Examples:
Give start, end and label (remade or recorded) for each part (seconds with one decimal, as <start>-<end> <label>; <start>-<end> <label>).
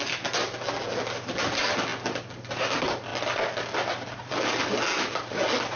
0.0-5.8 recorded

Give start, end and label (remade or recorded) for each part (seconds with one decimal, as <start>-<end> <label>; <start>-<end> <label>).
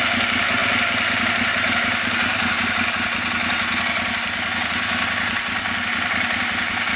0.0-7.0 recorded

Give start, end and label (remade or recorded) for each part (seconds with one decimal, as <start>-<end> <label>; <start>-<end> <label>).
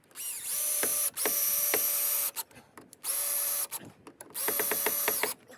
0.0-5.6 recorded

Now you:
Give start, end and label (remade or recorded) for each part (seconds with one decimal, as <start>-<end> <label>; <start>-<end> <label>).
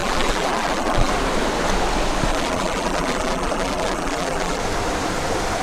0.0-1.1 remade; 1.1-2.3 recorded; 2.3-4.6 remade; 4.6-5.6 recorded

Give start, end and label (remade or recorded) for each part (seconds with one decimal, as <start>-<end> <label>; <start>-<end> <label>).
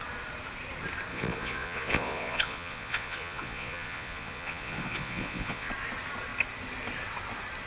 0.0-1.1 recorded; 1.1-5.7 remade; 5.7-7.7 recorded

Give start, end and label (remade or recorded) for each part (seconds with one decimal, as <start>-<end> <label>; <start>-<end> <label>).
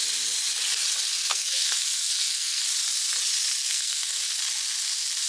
0.0-1.3 recorded; 1.3-2.6 remade; 2.6-3.7 recorded; 3.7-4.2 remade; 4.2-5.3 recorded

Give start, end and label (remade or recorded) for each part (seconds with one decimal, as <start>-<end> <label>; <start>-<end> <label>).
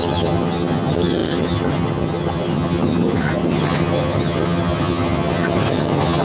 0.0-6.2 remade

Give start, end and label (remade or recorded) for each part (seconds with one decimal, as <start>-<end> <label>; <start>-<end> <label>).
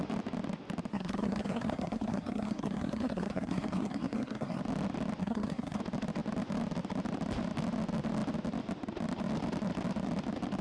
0.0-0.9 recorded; 0.9-4.6 remade; 4.6-5.2 recorded; 5.2-5.8 remade; 5.8-10.6 recorded